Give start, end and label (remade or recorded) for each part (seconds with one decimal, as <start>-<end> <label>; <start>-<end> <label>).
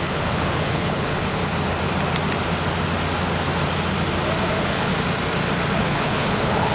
0.0-1.4 remade; 1.4-4.4 recorded; 4.4-4.9 remade; 4.9-5.8 recorded; 5.8-6.7 remade